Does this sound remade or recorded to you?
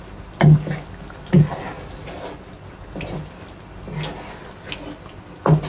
recorded